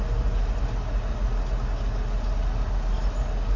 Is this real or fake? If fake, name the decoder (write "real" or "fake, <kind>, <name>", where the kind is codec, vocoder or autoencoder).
real